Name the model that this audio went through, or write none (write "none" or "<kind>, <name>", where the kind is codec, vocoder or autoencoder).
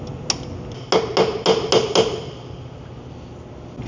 none